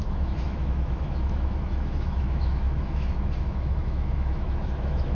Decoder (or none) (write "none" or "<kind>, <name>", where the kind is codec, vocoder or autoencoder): autoencoder, DAC-VAE